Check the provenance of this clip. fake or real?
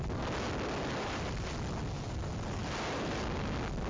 real